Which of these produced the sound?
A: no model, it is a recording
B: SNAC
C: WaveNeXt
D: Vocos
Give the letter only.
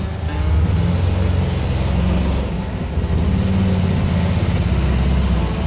A